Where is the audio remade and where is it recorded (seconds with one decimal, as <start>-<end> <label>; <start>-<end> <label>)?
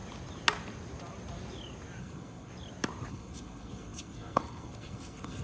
0.0-2.0 recorded; 2.0-2.5 remade; 2.5-3.1 recorded; 3.1-5.4 remade